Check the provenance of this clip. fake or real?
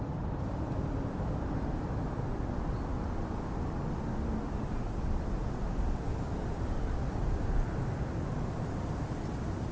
real